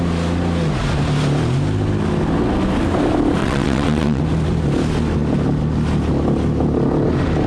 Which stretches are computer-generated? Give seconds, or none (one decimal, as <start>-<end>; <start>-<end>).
3.4-4.2